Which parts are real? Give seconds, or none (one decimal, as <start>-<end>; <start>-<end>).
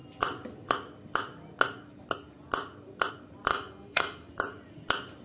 0.0-3.5; 4.3-5.2